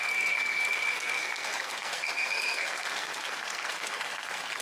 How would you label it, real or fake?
fake